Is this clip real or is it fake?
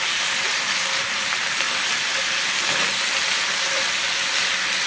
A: real